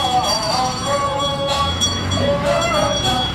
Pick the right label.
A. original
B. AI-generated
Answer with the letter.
B